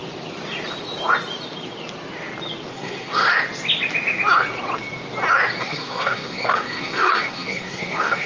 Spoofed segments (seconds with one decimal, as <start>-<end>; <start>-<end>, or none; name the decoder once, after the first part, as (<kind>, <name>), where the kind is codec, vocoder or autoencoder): 2.7-3.3 (codec, SNAC); 5.6-8.3